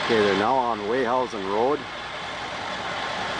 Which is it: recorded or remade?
recorded